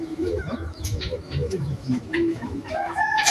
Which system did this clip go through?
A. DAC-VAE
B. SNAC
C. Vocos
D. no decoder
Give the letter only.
A